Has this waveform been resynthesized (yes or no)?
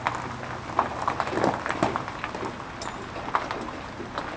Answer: no